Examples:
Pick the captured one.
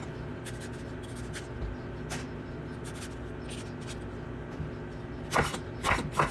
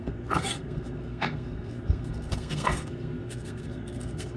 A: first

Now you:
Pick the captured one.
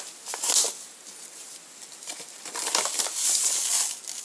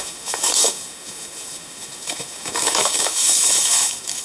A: first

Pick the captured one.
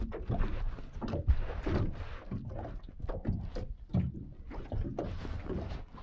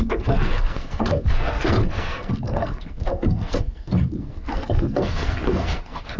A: first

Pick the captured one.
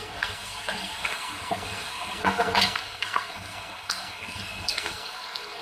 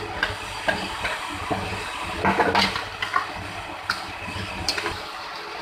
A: second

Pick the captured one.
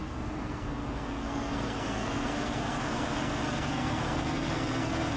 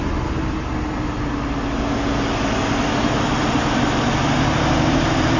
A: second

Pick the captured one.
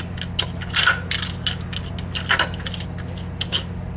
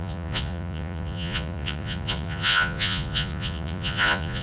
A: first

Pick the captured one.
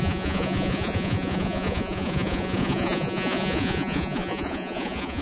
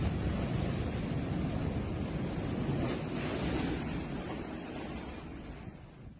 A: second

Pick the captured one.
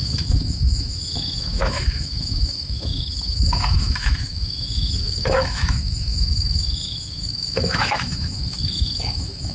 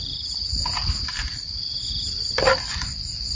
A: second